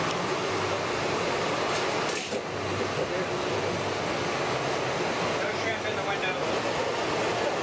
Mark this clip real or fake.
real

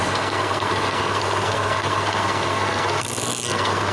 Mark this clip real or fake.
fake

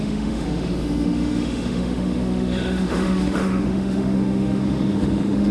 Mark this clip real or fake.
fake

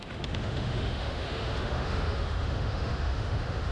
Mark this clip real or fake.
fake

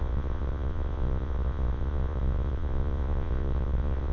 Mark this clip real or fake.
fake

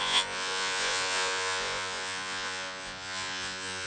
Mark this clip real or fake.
fake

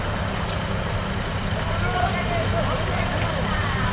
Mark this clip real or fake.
real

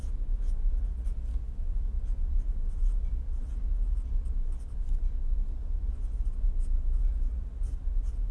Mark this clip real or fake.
real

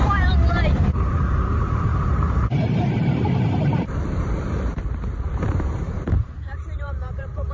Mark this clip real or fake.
fake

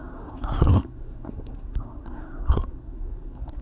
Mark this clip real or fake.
fake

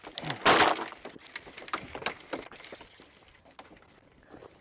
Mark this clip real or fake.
real